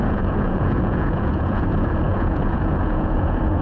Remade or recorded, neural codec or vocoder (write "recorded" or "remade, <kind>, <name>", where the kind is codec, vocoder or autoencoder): remade, vocoder, Vocos